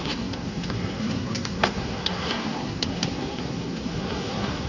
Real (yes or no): no